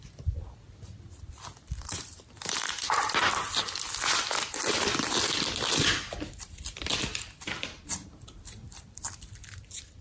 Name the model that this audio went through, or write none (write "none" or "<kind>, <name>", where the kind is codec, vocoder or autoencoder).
vocoder, BigVGAN v2